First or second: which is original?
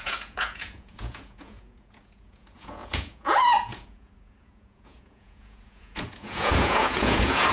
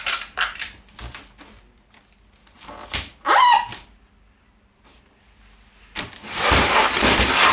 second